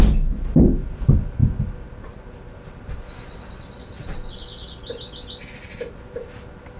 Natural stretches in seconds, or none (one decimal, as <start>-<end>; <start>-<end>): 0.0-6.8